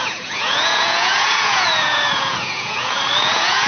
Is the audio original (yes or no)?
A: no